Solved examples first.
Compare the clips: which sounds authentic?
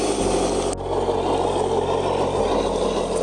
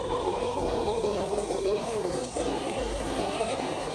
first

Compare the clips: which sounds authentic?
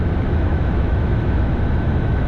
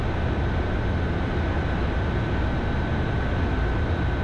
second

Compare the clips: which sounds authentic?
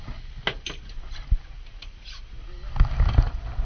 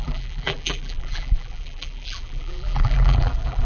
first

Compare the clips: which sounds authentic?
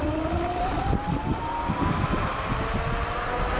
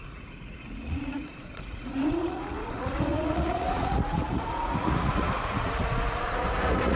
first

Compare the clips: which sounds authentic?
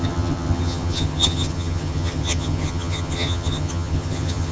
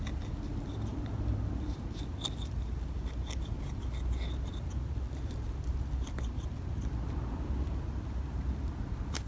second